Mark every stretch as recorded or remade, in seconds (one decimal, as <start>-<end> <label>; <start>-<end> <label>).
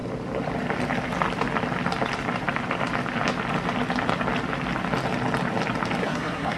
0.0-6.0 recorded; 6.0-6.6 remade